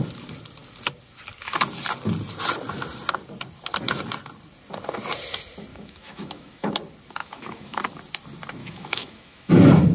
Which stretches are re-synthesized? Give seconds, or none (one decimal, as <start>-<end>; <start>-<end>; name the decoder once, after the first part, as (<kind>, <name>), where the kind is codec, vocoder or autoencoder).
5.7-6.7 (autoencoder, DAC-VAE); 7.2-7.8; 8.6-9.5